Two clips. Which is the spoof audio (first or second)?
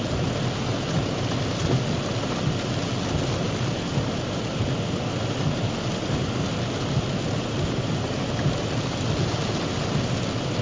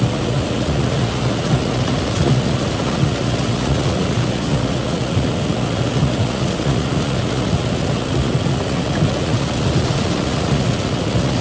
second